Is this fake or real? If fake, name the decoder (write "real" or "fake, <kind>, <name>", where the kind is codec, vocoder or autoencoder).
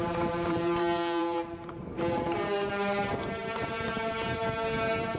fake, vocoder, BigVGAN v2